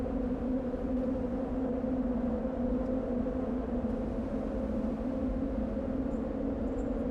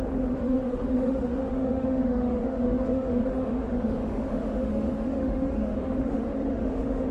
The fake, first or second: second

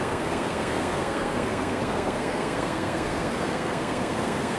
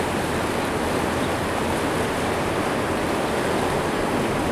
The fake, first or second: first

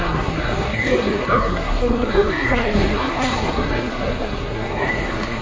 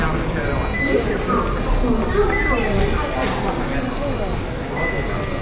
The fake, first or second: first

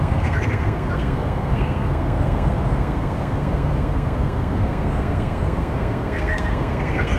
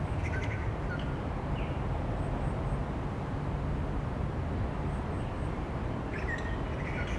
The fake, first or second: first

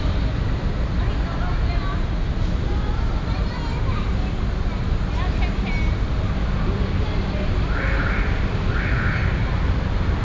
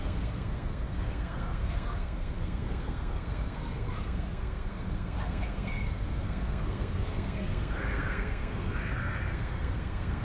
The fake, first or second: second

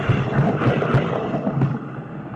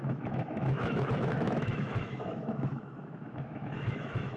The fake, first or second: second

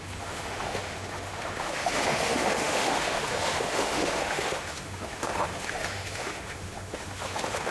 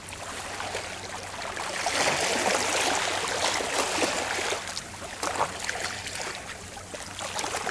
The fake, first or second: first